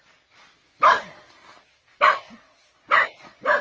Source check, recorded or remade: recorded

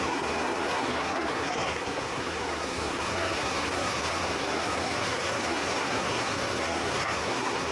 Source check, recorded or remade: remade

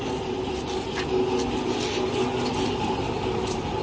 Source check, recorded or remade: recorded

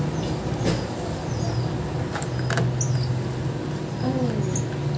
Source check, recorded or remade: recorded